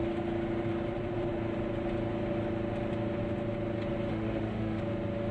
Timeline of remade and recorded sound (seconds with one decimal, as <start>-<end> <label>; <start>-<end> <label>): 0.0-4.1 recorded; 4.1-4.8 remade; 4.8-5.3 recorded